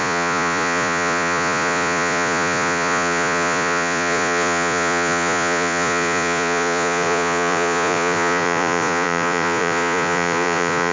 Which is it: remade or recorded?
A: remade